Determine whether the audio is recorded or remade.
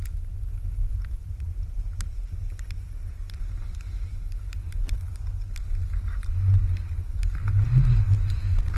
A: recorded